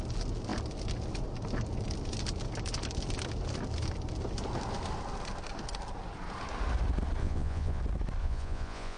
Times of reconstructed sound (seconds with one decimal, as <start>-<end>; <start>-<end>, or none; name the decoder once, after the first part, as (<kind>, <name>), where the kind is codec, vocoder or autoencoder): 7.2-7.8 (vocoder, Vocos); 8.2-9.0

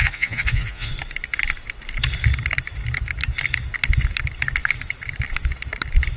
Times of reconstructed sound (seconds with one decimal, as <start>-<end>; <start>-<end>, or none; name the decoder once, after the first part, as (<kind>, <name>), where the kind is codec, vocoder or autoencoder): 0.0-0.9 (vocoder, Vocos)

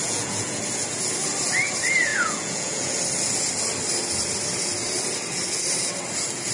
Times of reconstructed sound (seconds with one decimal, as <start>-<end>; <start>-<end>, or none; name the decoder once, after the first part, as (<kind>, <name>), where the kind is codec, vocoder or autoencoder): 0.0-0.6 (vocoder, Vocos); 2.1-3.0

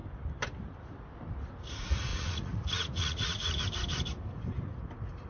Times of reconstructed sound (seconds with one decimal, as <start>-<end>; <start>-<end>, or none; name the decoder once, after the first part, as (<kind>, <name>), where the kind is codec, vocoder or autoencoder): 2.1-3.6 (vocoder, Vocos)

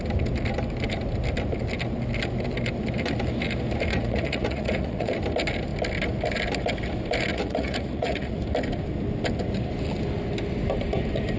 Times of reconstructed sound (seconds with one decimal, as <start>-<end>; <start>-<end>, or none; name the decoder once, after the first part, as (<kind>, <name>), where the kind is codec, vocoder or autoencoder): 3.9-5.1 (vocoder, Vocos); 7.3-8.4

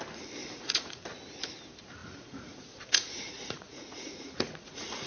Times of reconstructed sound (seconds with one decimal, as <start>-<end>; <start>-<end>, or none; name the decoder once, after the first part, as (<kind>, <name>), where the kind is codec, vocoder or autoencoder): 0.4-1.0 (vocoder, Vocos); 2.0-5.1

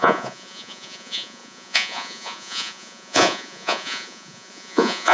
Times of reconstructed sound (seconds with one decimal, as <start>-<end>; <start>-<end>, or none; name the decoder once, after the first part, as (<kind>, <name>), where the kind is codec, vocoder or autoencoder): 0.0-5.1 (vocoder, Vocos)

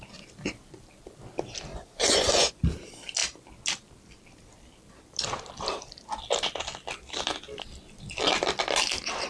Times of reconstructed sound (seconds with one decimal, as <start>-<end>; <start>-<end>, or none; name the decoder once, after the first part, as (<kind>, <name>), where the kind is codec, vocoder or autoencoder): 1.7-2.6 (vocoder, Vocos)